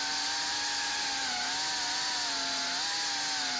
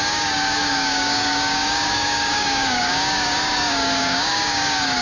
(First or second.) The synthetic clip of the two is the second